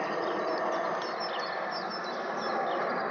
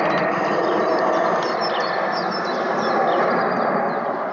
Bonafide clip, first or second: first